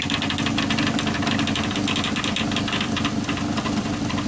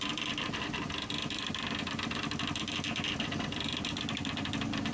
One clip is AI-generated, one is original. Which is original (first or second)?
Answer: first